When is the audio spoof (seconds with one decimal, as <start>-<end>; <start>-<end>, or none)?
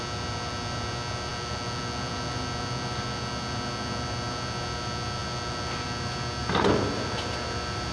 none